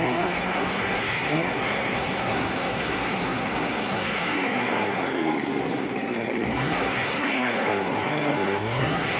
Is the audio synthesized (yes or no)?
yes